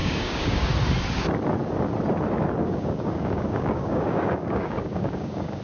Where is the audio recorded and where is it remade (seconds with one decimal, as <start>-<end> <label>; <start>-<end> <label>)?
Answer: 0.0-0.7 remade; 0.7-2.6 recorded; 2.6-5.6 remade